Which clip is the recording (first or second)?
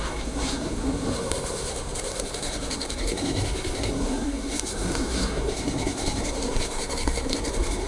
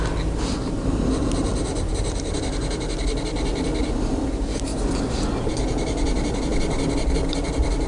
second